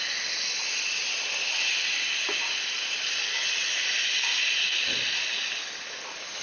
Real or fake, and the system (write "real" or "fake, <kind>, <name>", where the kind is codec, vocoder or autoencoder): real